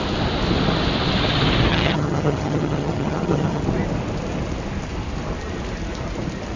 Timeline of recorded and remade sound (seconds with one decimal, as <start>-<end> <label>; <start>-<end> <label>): 0.0-1.7 recorded; 1.7-3.6 remade; 3.6-6.6 recorded